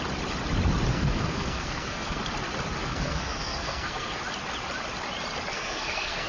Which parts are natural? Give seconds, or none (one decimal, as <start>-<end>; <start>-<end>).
0.0-0.9; 2.2-2.8; 4.2-5.5